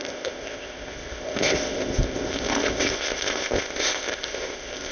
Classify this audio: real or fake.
fake